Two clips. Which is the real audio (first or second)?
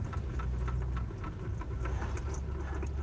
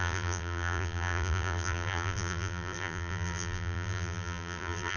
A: first